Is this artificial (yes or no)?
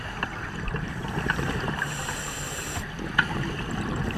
yes